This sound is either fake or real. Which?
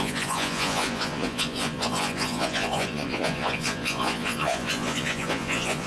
fake